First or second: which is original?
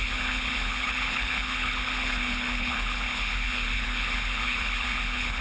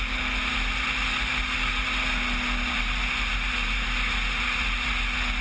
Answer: second